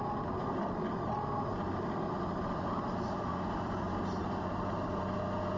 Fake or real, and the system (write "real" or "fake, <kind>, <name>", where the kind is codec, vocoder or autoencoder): fake, vocoder, BigVGAN v2